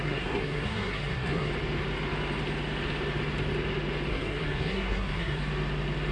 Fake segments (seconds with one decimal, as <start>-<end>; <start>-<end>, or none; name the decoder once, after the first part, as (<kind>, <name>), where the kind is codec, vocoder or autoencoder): 0.0-1.5 (codec, SNAC); 4.1-5.4